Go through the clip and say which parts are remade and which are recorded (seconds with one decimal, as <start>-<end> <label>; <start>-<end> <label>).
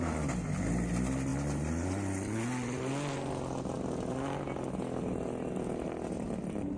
0.0-6.8 recorded